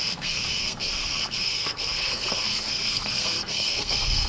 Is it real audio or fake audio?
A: fake